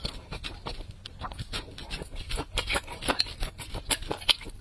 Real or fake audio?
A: fake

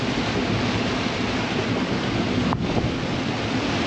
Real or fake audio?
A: real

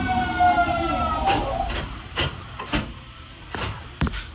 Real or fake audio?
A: fake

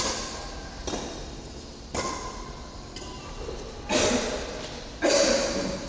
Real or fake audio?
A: real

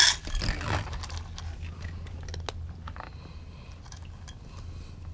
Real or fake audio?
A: real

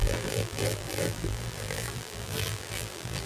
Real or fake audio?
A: fake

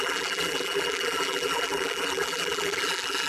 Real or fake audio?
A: fake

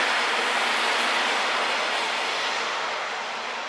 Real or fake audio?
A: real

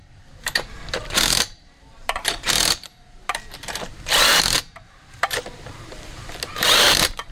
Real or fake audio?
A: fake